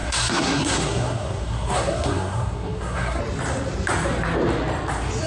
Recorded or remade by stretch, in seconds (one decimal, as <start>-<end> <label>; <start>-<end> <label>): 0.0-3.2 remade; 3.2-5.3 recorded